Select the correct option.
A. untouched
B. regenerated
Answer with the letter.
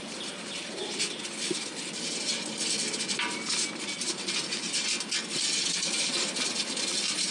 A